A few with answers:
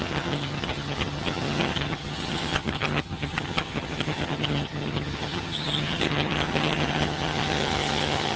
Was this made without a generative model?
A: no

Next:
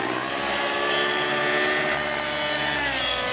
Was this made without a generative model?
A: yes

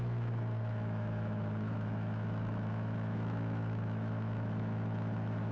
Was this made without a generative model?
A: no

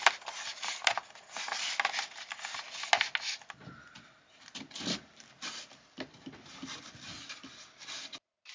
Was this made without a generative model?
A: yes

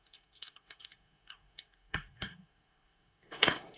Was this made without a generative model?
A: no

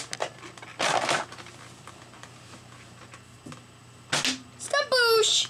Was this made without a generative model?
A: yes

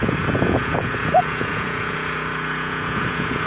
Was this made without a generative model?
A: no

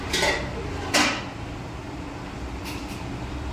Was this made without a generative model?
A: yes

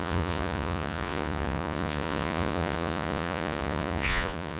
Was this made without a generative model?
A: no